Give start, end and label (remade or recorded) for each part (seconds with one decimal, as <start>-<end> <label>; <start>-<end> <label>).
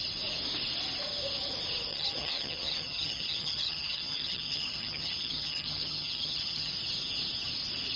0.0-1.9 recorded; 1.9-6.7 remade; 6.7-8.0 recorded